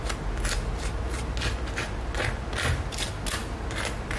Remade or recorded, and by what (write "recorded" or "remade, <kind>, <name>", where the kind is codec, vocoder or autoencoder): recorded